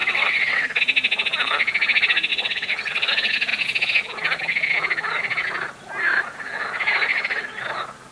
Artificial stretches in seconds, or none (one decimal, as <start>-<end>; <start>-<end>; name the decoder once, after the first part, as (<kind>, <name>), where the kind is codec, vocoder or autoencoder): 0.0-0.8 (vocoder, WaveNeXt); 2.3-3.1; 7.1-7.6